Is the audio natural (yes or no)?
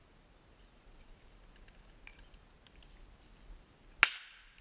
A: yes